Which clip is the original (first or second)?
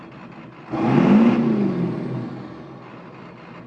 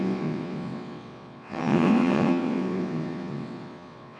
first